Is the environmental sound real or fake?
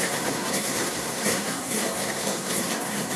fake